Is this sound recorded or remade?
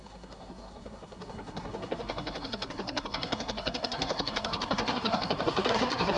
remade